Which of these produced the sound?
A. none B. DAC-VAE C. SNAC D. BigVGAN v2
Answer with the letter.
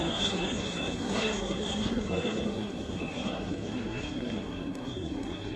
C